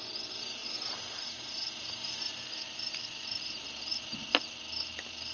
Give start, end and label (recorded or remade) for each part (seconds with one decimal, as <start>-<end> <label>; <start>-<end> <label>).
0.0-5.3 recorded